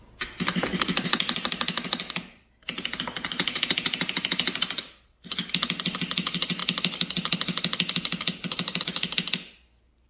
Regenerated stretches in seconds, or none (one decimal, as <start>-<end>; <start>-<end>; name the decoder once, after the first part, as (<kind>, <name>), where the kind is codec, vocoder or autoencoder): none

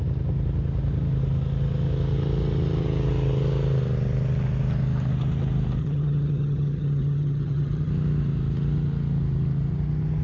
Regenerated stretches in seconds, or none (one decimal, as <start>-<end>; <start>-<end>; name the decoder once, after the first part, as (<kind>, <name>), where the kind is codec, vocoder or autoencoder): 5.8-7.9 (vocoder, HiFi-GAN)

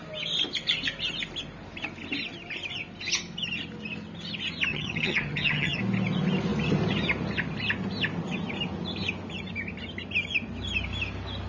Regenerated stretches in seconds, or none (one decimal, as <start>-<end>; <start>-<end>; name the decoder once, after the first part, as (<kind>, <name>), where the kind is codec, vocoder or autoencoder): 4.7-5.8 (vocoder, HiFi-GAN)

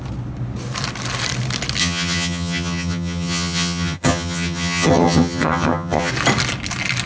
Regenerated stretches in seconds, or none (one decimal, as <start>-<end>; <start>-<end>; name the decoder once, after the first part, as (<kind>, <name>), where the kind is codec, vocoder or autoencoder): 1.8-6.1 (vocoder, HiFi-GAN)